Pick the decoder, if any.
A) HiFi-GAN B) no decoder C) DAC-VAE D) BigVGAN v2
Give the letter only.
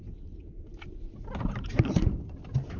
B